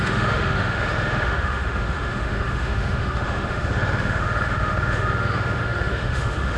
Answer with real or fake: fake